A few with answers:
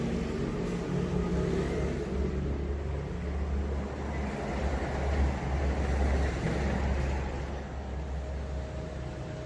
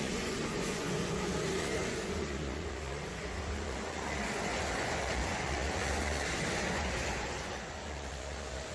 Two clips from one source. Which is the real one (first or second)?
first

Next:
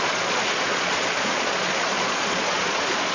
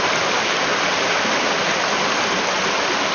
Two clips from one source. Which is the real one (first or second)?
second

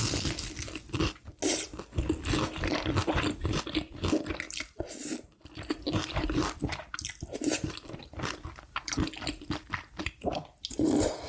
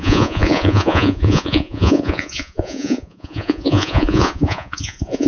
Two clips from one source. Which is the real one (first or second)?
first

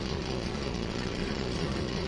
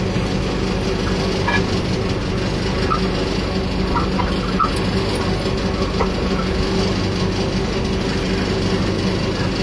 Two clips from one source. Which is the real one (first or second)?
second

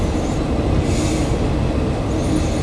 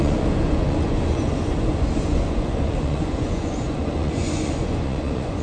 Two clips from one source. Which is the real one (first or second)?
first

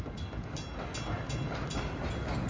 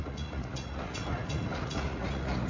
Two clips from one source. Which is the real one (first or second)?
first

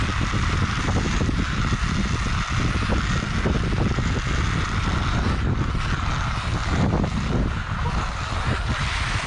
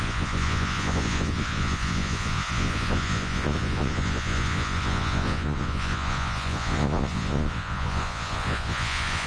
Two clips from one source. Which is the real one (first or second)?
first